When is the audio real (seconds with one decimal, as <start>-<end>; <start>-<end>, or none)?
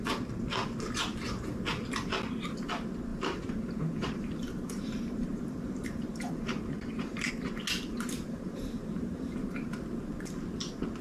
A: 0.0-3.1; 7.3-7.9; 9.8-11.0